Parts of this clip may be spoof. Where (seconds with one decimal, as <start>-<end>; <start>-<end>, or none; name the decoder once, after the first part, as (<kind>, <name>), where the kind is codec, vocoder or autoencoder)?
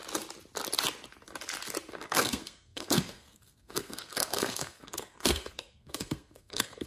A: 1.9-6.9 (codec, SNAC)